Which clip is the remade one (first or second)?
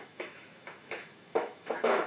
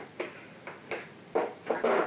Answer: first